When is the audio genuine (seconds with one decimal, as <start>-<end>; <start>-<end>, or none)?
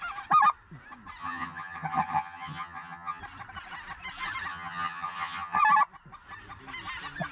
0.0-1.2; 3.2-4.5; 5.6-7.3